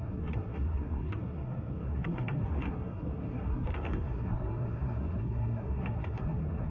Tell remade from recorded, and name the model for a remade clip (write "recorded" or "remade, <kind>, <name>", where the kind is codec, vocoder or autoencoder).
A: remade, codec, SNAC